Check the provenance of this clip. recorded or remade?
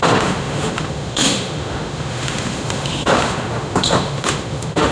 remade